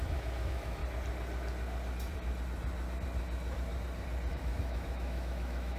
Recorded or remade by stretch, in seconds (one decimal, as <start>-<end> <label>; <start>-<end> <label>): 0.0-0.8 remade; 0.8-4.3 recorded; 4.3-5.8 remade